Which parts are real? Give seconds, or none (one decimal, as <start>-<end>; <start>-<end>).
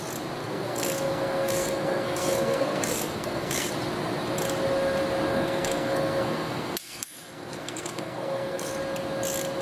0.0-0.4; 3.7-5.3; 8.7-9.6